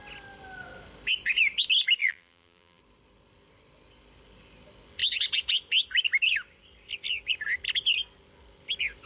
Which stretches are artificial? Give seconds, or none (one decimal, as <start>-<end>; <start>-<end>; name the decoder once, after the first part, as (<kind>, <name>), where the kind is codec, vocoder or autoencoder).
2.0-2.8 (vocoder, BigVGAN v2)